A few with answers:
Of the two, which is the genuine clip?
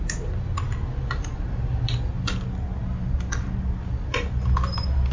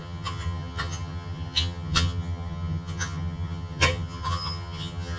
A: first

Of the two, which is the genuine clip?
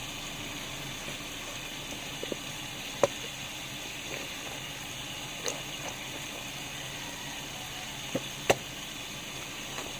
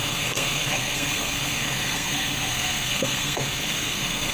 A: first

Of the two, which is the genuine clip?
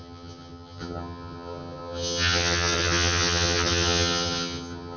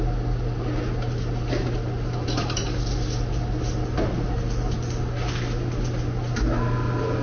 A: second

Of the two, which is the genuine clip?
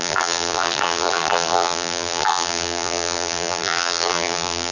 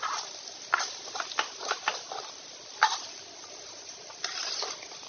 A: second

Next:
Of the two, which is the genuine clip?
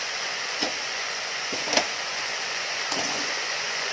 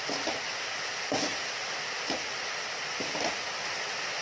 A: second